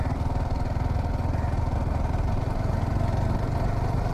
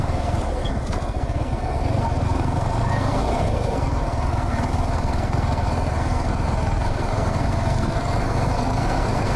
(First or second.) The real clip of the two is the first